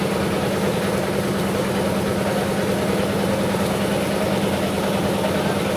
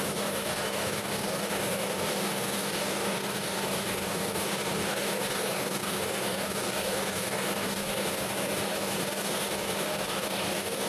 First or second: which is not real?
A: second